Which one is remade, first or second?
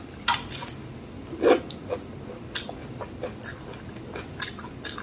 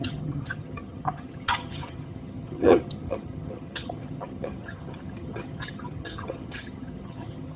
second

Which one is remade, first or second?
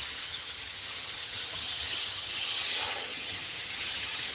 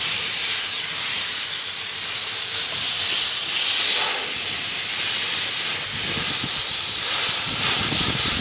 first